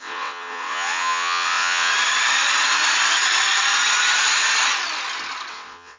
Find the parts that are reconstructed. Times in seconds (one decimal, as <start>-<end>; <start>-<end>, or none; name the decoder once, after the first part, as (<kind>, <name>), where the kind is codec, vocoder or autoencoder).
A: 0.0-1.9 (vocoder, WaveNeXt); 5.5-6.0